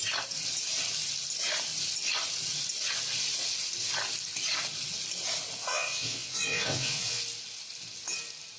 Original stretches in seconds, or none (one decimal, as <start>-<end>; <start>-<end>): 0.0-5.7; 7.2-8.6